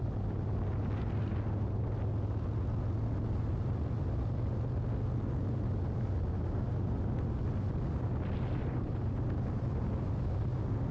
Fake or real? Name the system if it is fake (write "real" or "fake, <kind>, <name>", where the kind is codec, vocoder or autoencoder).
real